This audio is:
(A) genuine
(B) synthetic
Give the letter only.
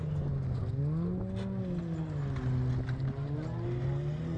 A